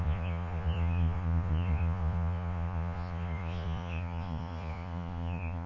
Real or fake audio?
fake